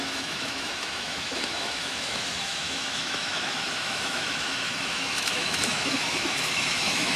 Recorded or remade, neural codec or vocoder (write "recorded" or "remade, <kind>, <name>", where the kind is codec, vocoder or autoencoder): remade, autoencoder, DAC-VAE